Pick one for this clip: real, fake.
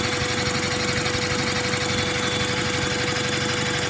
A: real